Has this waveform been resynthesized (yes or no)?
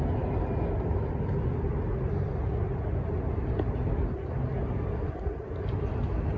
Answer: no